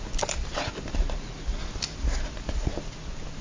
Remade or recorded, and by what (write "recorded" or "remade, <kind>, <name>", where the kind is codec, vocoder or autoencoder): recorded